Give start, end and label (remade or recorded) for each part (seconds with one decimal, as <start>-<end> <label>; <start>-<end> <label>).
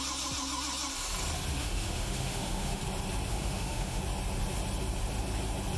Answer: 0.0-1.6 recorded; 1.6-2.8 remade; 2.8-3.3 recorded; 3.3-4.0 remade; 4.0-5.8 recorded